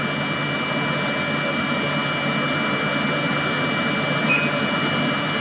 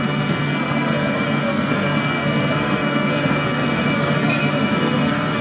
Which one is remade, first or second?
second